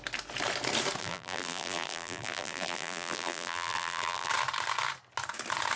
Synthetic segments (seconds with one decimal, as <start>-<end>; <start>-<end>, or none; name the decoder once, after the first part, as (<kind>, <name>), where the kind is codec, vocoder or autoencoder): 1.0-4.3 (vocoder, BigVGAN v2)